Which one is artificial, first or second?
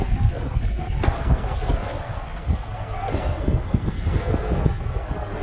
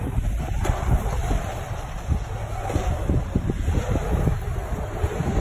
first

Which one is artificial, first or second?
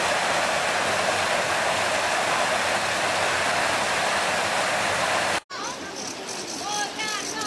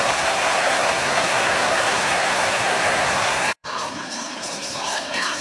second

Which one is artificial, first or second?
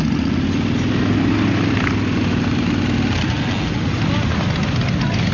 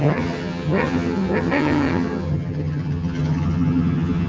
second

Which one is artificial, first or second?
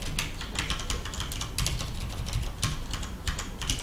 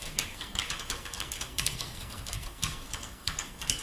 second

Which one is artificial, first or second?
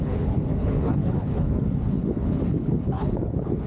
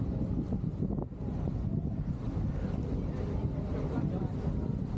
first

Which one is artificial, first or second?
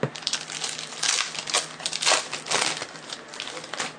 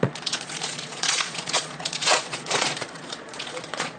second